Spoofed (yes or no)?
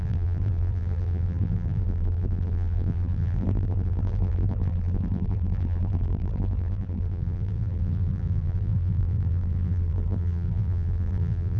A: yes